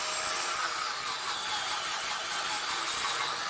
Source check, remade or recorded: recorded